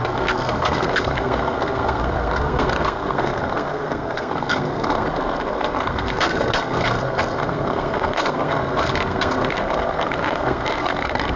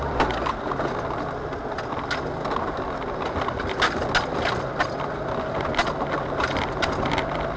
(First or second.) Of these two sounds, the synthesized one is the first